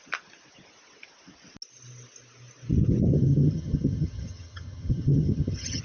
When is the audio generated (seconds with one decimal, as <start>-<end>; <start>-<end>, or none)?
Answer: 3.1-5.8